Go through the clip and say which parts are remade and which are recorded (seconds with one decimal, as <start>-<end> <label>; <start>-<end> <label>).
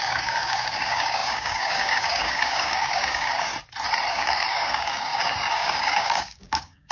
0.0-3.5 remade; 3.5-4.1 recorded; 4.1-6.9 remade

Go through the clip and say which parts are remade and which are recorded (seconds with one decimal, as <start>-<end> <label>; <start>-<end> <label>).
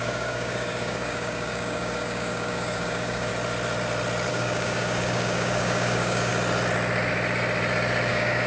0.0-3.3 remade; 3.3-4.3 recorded; 4.3-6.3 remade; 6.3-8.1 recorded; 8.1-8.5 remade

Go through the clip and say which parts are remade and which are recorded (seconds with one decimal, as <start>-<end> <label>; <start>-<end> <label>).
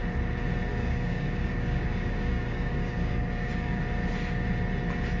0.0-0.7 recorded; 0.7-3.8 remade; 3.8-5.2 recorded